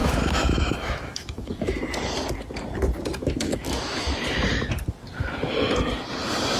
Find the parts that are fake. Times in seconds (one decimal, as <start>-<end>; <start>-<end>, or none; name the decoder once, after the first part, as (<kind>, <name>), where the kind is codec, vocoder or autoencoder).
0.0-1.8 (autoencoder, DAC-VAE); 3.2-4.1